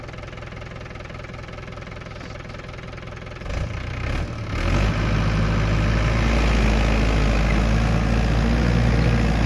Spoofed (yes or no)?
no